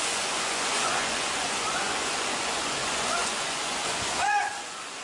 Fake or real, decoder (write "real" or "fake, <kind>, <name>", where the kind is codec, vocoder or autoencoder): fake, vocoder, Vocos